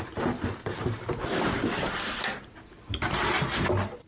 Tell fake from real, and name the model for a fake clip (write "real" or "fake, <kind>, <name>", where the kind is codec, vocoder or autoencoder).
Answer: real